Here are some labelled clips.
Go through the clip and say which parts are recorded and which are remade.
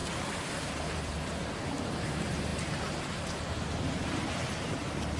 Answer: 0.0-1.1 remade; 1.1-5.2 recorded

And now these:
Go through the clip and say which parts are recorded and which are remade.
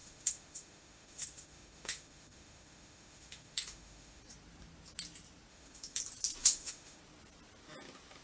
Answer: 0.0-4.2 remade; 4.2-5.5 recorded; 5.5-6.0 remade; 6.0-6.4 recorded; 6.4-7.0 remade; 7.0-8.2 recorded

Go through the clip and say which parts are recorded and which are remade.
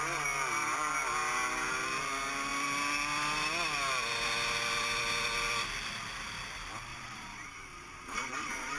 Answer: 0.0-6.9 recorded; 6.9-8.8 remade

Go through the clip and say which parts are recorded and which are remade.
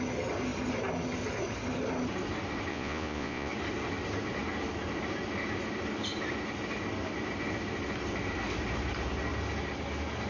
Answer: 0.0-2.7 recorded; 2.7-3.5 remade; 3.5-10.3 recorded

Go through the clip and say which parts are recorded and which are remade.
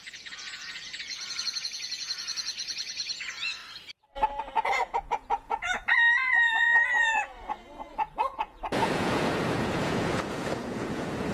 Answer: 0.0-3.6 remade; 3.6-4.4 recorded; 4.4-11.3 remade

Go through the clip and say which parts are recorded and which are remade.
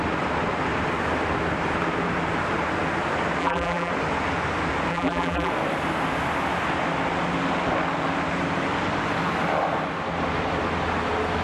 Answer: 0.0-3.4 recorded; 3.4-3.9 remade; 3.9-4.9 recorded; 4.9-5.5 remade; 5.5-11.4 recorded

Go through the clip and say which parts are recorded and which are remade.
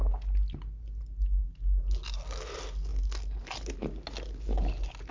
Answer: 0.0-5.1 recorded